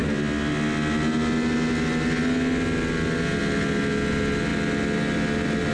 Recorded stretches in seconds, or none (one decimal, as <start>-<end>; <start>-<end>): 0.0-5.7